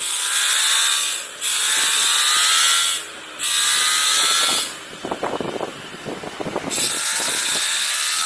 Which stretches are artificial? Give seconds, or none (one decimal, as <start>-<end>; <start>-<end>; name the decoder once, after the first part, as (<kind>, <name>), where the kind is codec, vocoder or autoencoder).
none